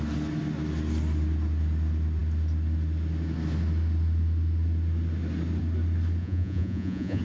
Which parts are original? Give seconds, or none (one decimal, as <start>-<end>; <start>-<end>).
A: 0.0-6.2